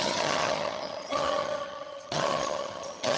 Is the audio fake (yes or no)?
yes